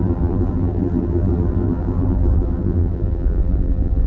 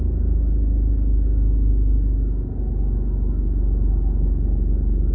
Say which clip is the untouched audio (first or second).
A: second